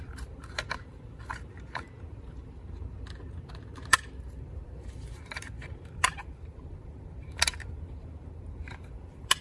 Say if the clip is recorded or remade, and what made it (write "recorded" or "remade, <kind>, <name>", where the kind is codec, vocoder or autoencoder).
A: remade, vocoder, BigVGAN v2